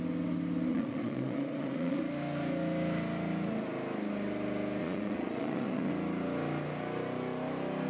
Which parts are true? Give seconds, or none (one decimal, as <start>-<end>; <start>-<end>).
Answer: 0.0-0.7; 2.0-4.8; 5.9-7.9